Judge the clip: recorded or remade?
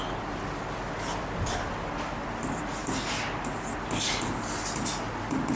recorded